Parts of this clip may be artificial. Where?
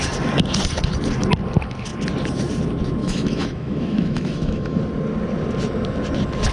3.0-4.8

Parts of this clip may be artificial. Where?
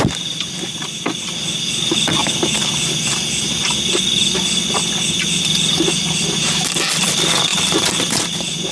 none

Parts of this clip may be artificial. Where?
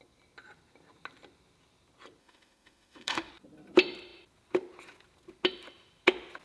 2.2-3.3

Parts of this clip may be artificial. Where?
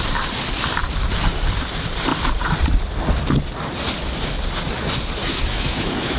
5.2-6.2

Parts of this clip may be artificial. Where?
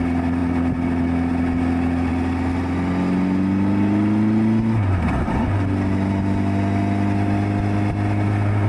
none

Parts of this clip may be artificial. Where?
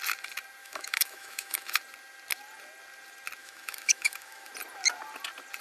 0.6-1.8; 3.4-4.5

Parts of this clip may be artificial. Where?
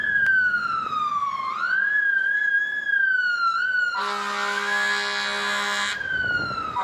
none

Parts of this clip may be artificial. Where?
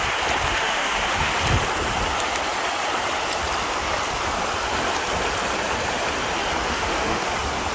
0.5-1.3; 6.6-7.3